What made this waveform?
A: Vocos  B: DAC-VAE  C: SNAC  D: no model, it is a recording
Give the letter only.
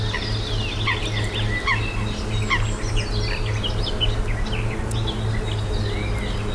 D